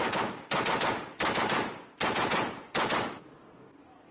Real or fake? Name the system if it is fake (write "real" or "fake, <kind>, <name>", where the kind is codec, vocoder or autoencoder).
real